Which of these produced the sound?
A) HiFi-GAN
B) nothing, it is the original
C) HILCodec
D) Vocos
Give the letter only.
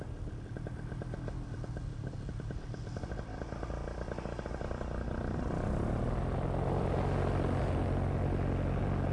B